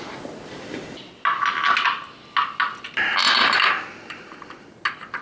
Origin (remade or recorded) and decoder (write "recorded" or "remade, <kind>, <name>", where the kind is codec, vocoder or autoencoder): recorded